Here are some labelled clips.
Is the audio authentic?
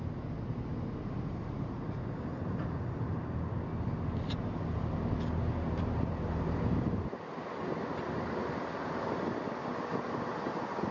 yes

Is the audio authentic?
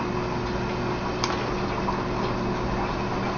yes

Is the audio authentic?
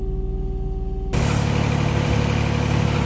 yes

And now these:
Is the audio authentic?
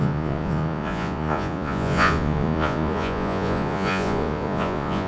no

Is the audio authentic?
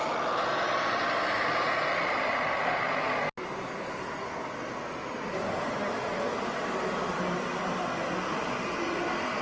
yes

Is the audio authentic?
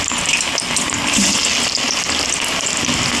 yes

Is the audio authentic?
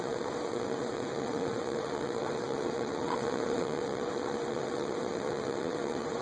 no